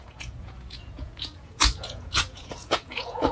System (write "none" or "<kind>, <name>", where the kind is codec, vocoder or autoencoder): vocoder, Vocos